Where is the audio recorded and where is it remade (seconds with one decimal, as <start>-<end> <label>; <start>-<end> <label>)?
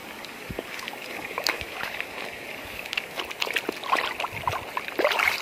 0.0-3.2 remade; 3.2-5.4 recorded